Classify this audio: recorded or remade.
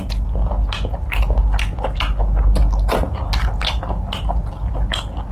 recorded